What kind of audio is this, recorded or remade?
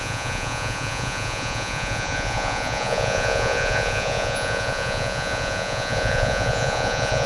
remade